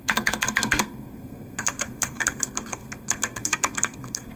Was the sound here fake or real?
fake